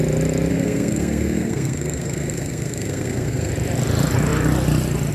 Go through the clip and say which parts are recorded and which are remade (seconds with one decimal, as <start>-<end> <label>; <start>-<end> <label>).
0.0-0.5 recorded; 0.5-3.5 remade; 3.5-5.1 recorded